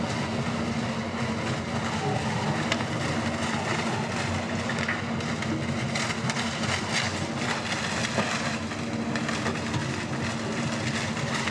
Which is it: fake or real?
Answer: real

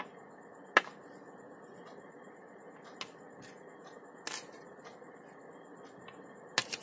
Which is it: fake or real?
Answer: real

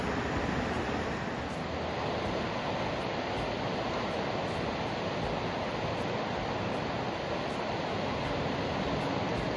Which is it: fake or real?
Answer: real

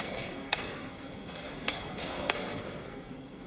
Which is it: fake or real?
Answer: fake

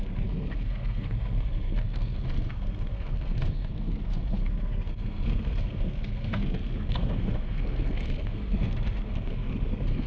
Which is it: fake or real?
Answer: fake